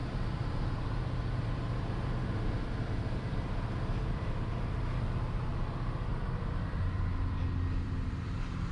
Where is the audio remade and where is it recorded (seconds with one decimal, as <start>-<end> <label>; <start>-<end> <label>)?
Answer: 0.0-4.5 remade; 4.5-6.1 recorded; 6.1-8.7 remade